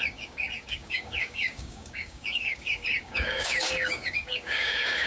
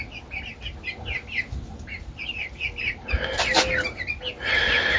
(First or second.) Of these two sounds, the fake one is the first